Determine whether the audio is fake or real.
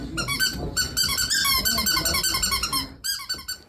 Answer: real